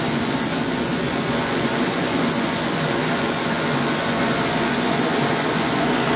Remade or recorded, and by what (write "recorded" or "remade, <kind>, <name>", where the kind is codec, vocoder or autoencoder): remade, vocoder, Vocos